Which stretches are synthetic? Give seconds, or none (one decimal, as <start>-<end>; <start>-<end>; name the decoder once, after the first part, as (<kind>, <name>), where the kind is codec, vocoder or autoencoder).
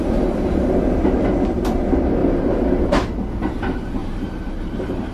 2.2-2.9 (vocoder, BigVGAN v2); 4.0-5.1